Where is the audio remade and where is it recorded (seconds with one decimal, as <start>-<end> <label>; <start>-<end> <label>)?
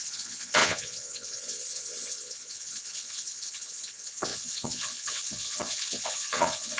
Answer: 0.0-6.8 remade